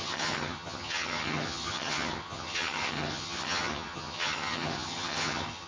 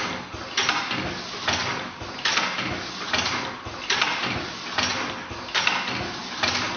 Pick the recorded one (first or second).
second